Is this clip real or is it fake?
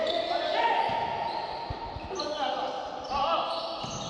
real